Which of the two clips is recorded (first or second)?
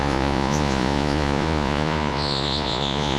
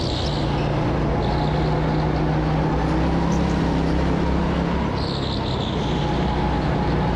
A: second